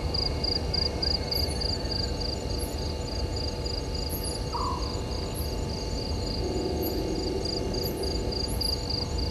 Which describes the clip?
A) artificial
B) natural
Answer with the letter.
B